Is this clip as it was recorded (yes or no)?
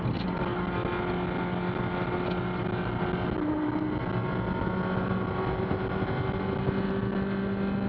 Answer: yes